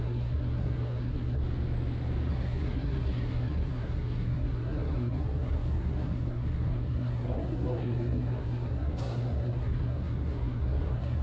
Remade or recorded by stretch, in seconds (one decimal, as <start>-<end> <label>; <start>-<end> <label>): 0.0-1.4 remade; 1.4-2.3 recorded; 2.3-11.2 remade